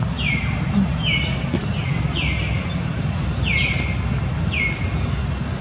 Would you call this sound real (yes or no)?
yes